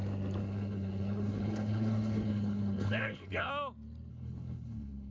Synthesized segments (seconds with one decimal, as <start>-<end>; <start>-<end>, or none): 0.4-3.5; 4.1-5.1